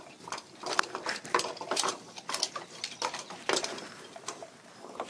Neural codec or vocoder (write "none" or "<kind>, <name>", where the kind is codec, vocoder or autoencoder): vocoder, BigVGAN v2